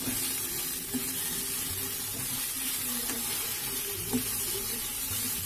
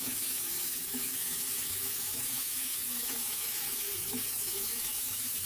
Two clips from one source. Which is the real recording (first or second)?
first